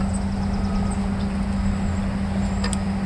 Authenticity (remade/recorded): recorded